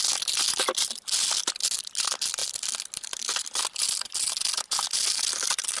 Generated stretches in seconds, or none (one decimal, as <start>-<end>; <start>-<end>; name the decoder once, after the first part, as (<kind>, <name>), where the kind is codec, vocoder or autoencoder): none